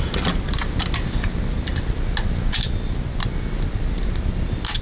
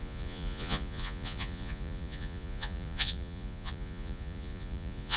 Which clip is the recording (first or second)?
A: first